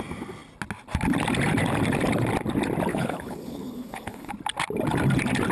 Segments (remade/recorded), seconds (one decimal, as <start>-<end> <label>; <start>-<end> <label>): 0.0-2.9 recorded; 2.9-4.3 remade; 4.3-5.5 recorded